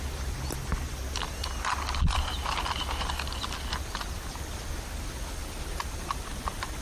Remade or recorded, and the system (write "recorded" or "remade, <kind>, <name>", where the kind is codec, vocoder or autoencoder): recorded